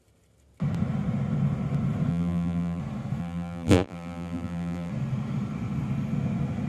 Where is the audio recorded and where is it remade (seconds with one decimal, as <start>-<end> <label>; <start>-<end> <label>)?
0.0-2.1 recorded; 2.1-2.8 remade; 2.8-3.2 recorded; 3.2-4.9 remade; 4.9-6.7 recorded